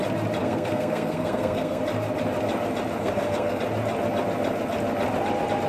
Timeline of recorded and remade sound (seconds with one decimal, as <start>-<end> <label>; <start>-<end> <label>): 0.0-0.4 recorded; 0.4-1.8 remade; 1.8-3.0 recorded; 3.0-3.6 remade; 3.6-5.7 recorded